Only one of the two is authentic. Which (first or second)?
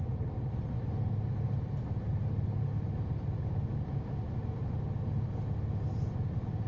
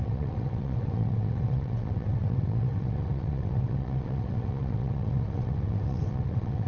first